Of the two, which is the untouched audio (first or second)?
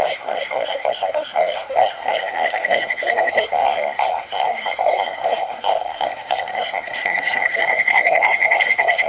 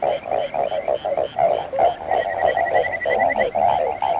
second